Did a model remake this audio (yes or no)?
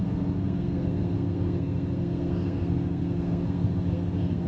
yes